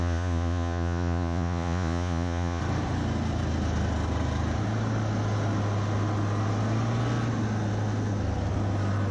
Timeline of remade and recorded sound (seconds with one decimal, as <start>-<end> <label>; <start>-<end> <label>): 0.0-2.6 remade; 2.6-9.1 recorded